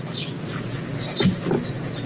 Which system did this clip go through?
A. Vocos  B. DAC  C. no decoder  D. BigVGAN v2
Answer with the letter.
C